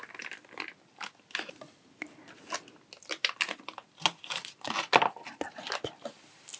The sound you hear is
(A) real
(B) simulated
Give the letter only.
A